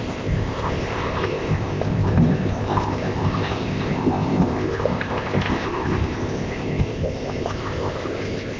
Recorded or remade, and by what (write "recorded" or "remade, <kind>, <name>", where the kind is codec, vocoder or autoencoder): remade, codec, ZipCodec